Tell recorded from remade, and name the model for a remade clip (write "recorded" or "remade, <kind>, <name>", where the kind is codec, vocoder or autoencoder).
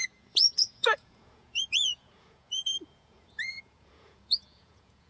remade, vocoder, Vocos